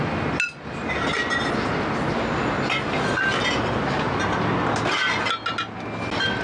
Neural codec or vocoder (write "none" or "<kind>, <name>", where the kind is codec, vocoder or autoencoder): none